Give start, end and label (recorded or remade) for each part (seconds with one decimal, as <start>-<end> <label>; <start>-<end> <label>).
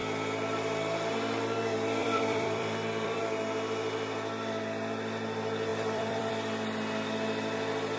0.0-2.0 recorded; 2.0-3.2 remade; 3.2-5.7 recorded; 5.7-6.3 remade; 6.3-8.0 recorded